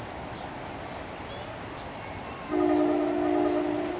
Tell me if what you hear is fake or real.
real